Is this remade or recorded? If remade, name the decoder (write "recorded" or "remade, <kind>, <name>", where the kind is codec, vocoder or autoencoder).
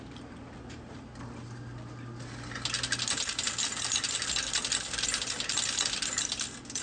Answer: recorded